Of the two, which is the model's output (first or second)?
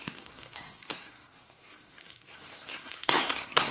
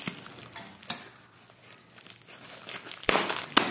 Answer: first